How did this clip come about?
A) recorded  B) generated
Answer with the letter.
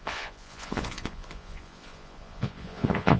B